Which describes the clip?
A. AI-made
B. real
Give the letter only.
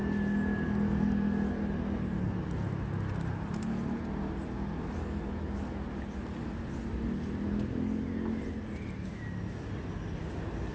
B